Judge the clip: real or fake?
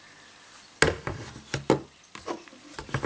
real